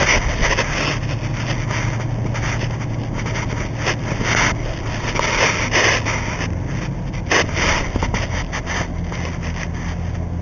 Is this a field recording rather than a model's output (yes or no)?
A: yes